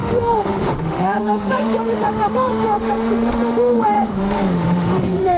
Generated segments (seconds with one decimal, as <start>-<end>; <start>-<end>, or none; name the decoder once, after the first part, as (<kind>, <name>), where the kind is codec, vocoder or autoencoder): 0.0-5.4 (autoencoder, DAC-VAE)